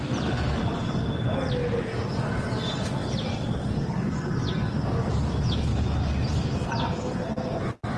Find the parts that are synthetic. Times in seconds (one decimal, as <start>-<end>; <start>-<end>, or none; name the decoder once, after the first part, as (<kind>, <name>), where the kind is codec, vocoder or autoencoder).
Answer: none